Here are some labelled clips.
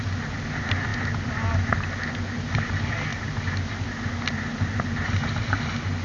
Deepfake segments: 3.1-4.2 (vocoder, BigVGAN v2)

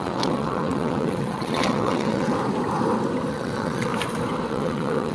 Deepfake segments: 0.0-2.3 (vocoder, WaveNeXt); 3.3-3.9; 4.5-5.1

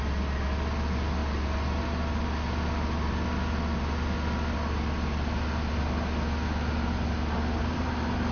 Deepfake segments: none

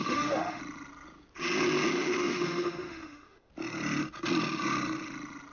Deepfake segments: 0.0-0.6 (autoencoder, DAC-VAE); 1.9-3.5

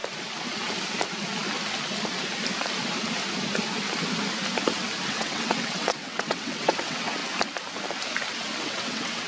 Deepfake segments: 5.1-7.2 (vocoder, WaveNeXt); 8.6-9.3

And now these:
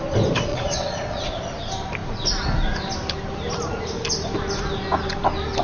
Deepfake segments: 0.5-1.3 (vocoder, Vocos)